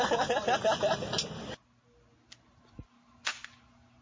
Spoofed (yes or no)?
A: no